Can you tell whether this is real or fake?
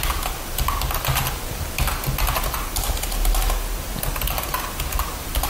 real